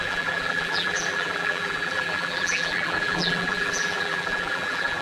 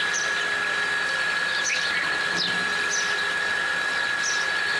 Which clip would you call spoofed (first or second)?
first